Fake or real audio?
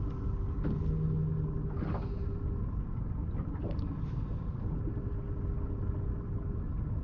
real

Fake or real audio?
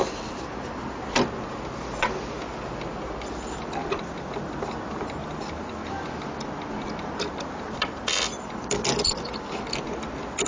real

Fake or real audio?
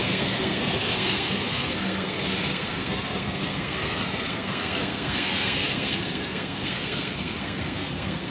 fake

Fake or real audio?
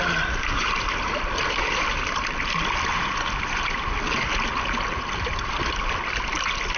real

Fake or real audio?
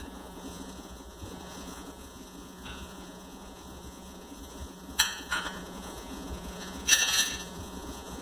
fake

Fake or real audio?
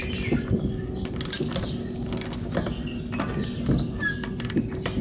real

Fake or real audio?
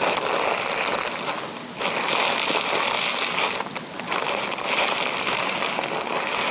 real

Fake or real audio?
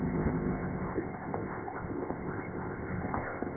fake